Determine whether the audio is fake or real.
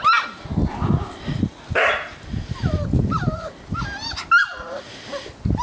real